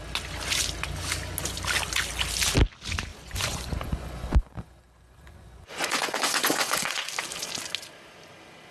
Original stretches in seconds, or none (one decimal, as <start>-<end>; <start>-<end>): 0.0-3.1; 7.1-8.7